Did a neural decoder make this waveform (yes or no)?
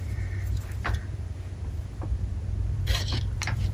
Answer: yes